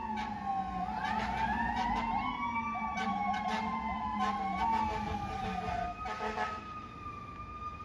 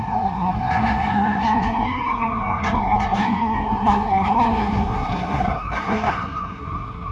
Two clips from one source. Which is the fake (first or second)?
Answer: second